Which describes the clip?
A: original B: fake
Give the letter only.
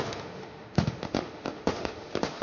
B